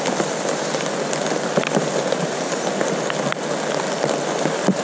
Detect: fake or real real